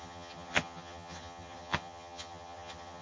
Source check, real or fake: fake